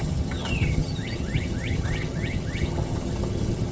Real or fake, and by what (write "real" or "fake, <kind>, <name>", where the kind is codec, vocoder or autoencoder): fake, vocoder, HiFi-GAN